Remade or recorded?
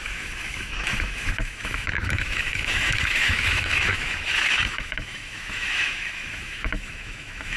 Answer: remade